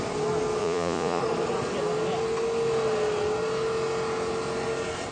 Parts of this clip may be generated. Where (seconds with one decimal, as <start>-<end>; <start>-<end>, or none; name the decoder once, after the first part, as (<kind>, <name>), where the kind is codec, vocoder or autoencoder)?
0.6-1.2 (vocoder, Vocos)